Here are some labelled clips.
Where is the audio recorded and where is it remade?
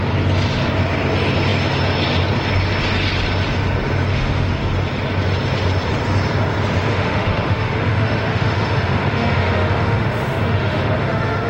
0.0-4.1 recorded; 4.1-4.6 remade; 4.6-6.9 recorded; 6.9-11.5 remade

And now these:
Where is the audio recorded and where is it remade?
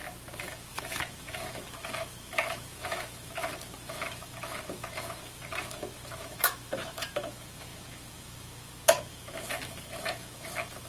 0.0-10.9 remade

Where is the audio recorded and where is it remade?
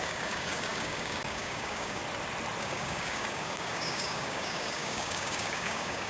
0.0-2.0 remade; 2.0-2.6 recorded; 2.6-6.1 remade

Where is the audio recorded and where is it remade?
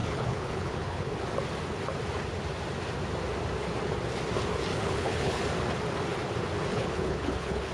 0.0-1.1 remade; 1.1-4.7 recorded; 4.7-5.4 remade; 5.4-6.7 recorded; 6.7-7.7 remade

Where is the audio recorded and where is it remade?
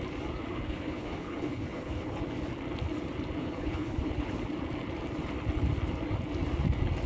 0.0-0.5 recorded; 0.5-2.2 remade; 2.2-3.4 recorded; 3.4-4.3 remade; 4.3-7.1 recorded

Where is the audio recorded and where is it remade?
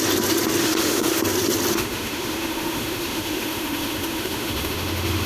0.0-0.6 recorded; 0.6-1.2 remade; 1.2-1.7 recorded; 1.7-5.3 remade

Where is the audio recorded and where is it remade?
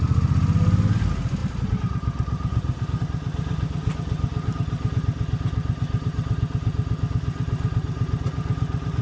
0.0-9.0 recorded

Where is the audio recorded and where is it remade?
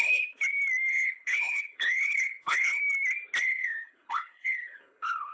0.0-0.4 remade; 0.4-0.9 recorded; 0.9-2.8 remade; 2.8-3.4 recorded; 3.4-5.3 remade